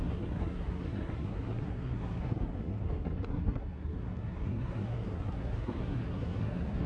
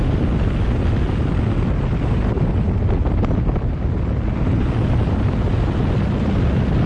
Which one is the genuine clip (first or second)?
second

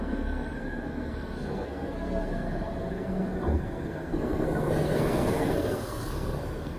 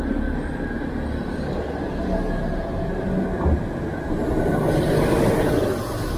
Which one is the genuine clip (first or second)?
second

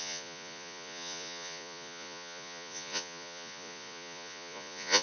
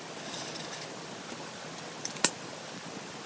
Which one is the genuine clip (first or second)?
second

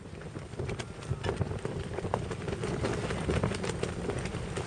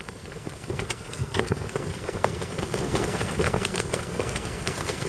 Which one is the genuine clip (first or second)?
first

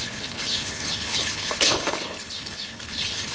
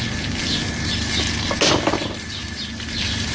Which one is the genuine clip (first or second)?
second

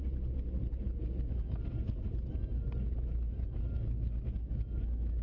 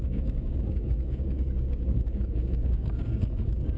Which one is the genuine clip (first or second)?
first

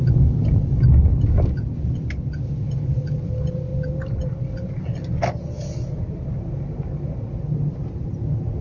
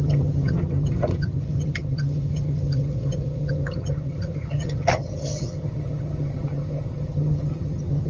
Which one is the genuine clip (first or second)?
first